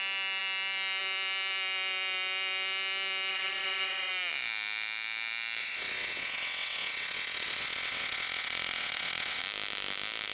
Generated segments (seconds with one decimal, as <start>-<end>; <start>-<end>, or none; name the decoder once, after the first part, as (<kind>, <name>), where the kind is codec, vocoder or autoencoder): 3.3-4.1 (vocoder, WaveNeXt); 5.6-9.4